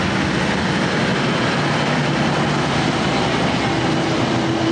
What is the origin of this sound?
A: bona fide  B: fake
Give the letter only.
A